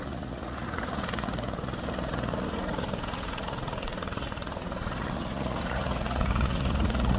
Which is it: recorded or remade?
remade